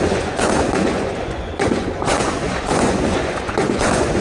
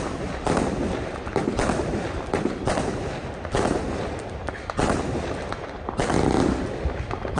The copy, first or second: first